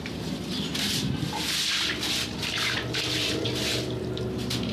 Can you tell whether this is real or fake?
fake